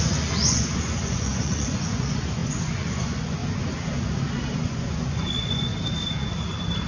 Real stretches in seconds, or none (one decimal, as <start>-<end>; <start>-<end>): 3.4-4.6; 5.7-6.9